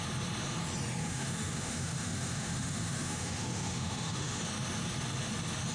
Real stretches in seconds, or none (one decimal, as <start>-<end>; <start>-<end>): 0.0-1.0; 4.4-5.7